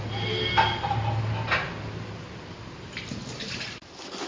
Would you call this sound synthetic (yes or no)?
no